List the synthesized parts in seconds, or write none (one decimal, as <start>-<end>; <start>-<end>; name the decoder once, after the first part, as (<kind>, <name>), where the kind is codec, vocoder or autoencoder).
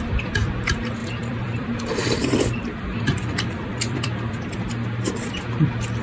1.0-4.6 (vocoder, BigVGAN v2)